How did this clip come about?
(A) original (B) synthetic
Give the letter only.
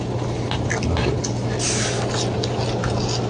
A